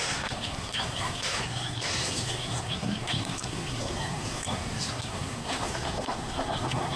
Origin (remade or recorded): remade